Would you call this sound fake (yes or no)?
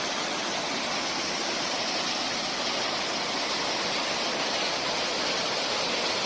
no